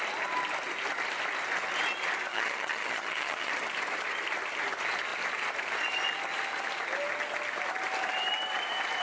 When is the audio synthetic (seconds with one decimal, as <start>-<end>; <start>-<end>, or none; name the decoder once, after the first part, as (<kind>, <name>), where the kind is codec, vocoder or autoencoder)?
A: 2.3-3.5 (vocoder, HiFi-GAN)